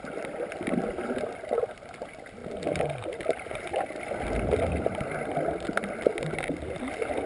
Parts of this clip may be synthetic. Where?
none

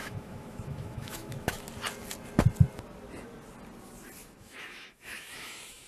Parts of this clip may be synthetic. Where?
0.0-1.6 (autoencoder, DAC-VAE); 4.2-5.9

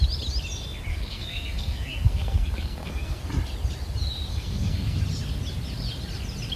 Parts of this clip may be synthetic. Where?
0.9-3.3 (codec, SNAC); 4.3-5.0

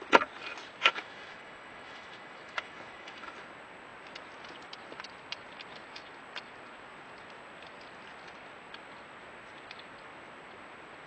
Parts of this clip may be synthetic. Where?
0.8-3.3 (autoencoder, DAC-VAE)

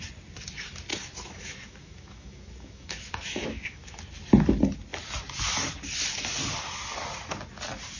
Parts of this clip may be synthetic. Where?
0.9-4.0 (autoencoder, DAC-VAE)

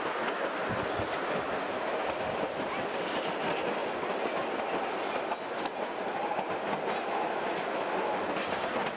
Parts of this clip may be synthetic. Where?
none

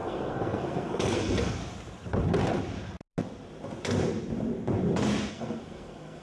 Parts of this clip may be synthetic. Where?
0.0-1.6 (codec, SNAC); 5.3-6.2

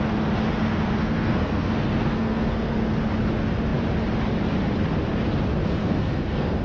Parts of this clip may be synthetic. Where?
0.5-2.9 (codec, SNAC); 5.8-6.6